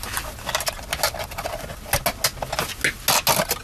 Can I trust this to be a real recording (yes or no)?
yes